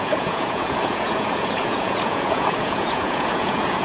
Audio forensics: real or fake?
fake